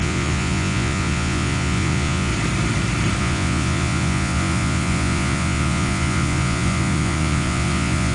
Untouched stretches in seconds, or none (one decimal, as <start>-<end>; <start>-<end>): 2.3-3.2